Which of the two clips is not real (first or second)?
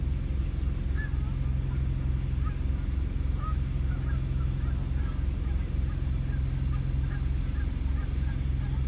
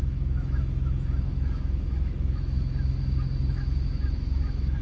second